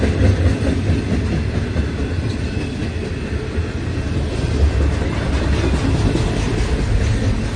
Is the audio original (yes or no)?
yes